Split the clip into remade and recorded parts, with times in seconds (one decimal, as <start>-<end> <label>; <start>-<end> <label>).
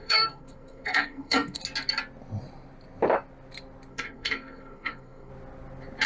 0.0-1.6 remade; 1.6-3.9 recorded; 3.9-5.3 remade; 5.3-6.1 recorded